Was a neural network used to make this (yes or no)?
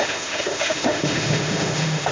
yes